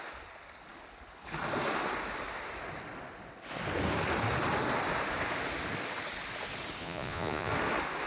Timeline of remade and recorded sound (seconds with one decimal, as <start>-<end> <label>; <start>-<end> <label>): 0.0-6.8 recorded; 6.8-7.5 remade; 7.5-8.1 recorded